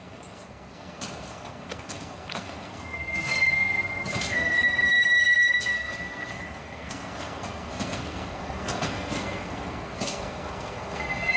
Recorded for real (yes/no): no